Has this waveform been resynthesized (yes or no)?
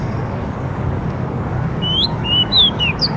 yes